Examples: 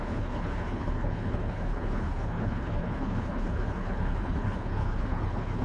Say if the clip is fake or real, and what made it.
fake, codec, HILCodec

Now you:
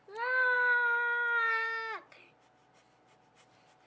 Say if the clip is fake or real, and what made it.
real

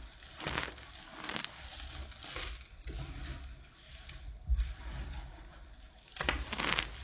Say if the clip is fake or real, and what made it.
real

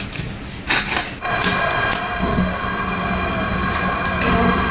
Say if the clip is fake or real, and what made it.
real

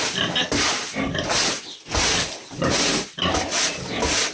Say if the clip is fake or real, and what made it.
real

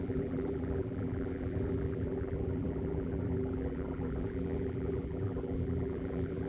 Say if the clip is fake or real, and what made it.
fake, vocoder, BigVGAN v2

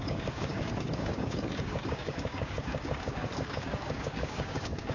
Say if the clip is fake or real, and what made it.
fake, codec, DAC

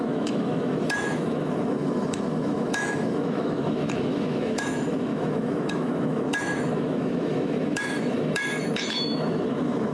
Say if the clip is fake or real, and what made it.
fake, autoencoder, DAC-VAE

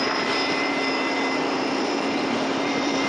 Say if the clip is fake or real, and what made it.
fake, vocoder, BigVGAN v2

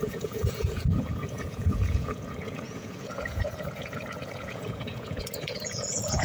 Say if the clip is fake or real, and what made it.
fake, vocoder, Vocos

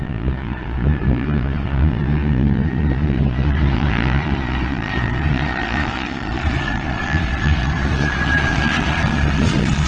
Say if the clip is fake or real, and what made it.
fake, vocoder, Vocos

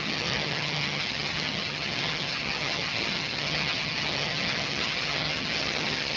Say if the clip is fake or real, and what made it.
fake, vocoder, HiFi-GAN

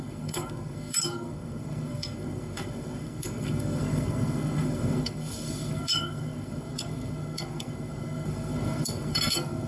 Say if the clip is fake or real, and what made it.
fake, codec, SNAC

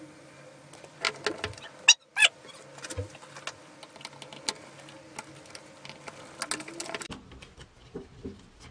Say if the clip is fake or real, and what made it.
real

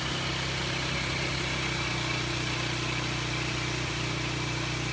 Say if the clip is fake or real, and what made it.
real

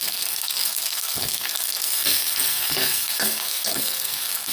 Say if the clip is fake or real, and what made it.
fake, codec, SNAC